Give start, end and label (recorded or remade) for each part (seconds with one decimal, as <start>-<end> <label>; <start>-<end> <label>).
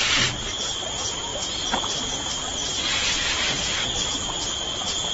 0.0-5.1 recorded